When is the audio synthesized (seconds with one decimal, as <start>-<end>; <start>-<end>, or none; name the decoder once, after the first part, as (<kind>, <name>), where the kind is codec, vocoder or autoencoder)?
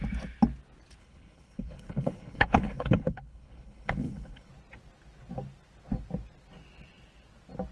1.0-4.5 (codec, HILCodec)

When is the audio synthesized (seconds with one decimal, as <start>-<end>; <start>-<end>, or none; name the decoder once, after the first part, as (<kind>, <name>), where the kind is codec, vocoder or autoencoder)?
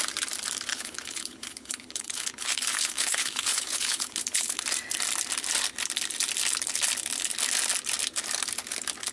0.7-4.6 (codec, HILCodec)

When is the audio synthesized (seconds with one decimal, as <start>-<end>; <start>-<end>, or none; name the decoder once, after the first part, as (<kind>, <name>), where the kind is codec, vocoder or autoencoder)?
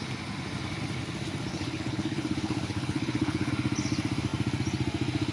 1.5-3.5 (codec, HILCodec)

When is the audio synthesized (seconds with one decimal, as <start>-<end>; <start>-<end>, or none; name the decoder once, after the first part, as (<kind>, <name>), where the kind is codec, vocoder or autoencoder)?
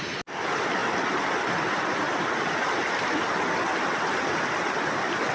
none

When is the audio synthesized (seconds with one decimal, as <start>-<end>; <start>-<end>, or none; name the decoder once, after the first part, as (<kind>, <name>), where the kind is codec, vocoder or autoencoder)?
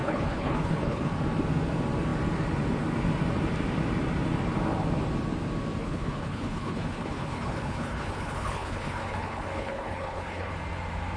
0.0-1.1 (codec, HILCodec); 5.8-10.5